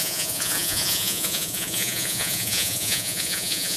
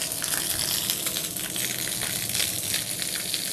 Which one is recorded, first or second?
second